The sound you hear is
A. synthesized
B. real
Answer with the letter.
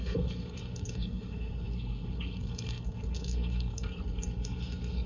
A